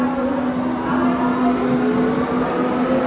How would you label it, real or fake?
real